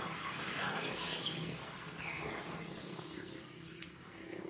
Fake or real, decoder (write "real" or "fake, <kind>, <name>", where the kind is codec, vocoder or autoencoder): fake, codec, SNAC